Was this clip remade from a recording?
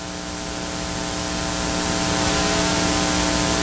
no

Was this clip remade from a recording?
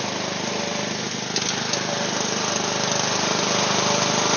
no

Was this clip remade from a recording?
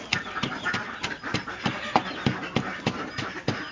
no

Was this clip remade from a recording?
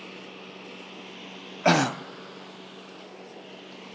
no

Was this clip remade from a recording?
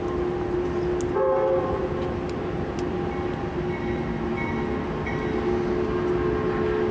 no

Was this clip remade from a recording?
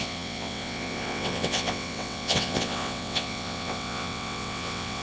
yes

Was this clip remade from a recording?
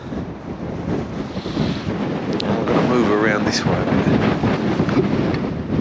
no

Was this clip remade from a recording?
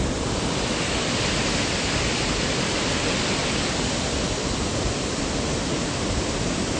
no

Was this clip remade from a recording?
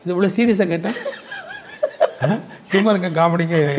yes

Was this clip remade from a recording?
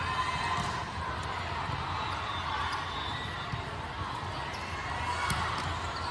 no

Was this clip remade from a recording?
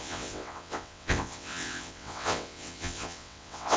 yes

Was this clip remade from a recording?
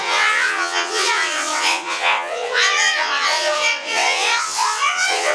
yes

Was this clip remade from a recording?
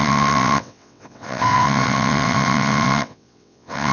yes